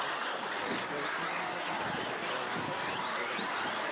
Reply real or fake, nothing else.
real